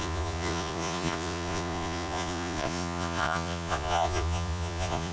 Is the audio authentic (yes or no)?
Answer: no